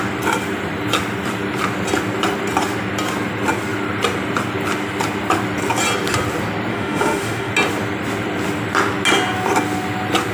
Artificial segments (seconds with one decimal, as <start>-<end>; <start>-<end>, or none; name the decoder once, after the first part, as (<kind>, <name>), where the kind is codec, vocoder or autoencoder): 6.7-7.5 (autoencoder, DAC-VAE)

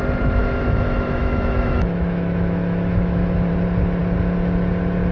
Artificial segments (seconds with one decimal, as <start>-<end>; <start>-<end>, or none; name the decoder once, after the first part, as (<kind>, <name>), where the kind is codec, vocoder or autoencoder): 0.4-3.5 (autoencoder, DAC-VAE)